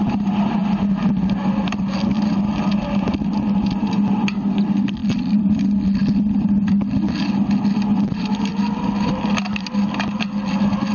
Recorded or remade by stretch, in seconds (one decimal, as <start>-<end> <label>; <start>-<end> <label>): 0.0-10.9 recorded